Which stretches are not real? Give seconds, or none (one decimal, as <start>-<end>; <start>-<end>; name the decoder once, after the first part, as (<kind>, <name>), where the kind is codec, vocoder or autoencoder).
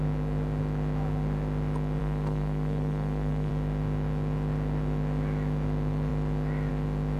2.0-3.5 (codec, SNAC)